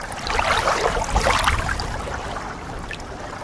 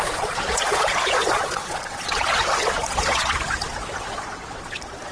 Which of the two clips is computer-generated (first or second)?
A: second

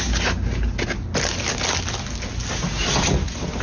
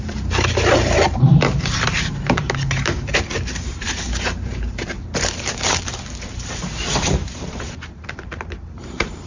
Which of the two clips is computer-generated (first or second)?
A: second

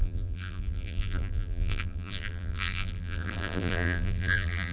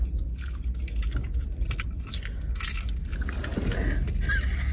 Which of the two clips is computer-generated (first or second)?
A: first